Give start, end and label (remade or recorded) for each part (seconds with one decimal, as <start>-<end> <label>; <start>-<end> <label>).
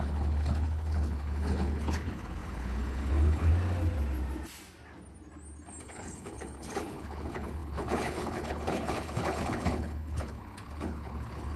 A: 0.0-3.5 remade; 3.5-5.8 recorded; 5.8-11.6 remade